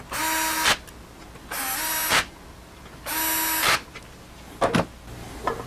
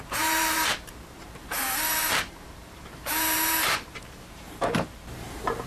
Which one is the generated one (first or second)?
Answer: second